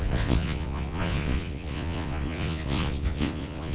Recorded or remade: remade